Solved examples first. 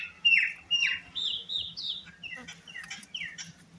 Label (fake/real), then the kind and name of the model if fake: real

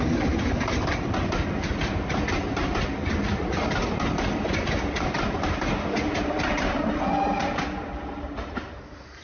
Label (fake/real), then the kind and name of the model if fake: real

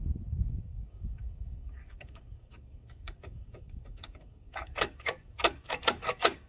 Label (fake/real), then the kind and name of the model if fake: fake, codec, DAC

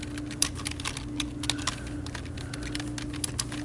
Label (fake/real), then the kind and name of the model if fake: real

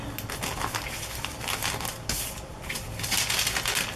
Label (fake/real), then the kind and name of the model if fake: real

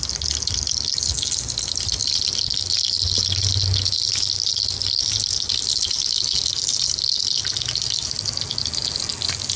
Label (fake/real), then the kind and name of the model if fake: real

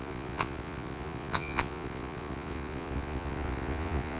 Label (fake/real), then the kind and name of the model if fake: fake, vocoder, Vocos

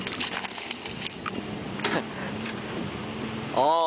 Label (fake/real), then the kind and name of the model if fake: real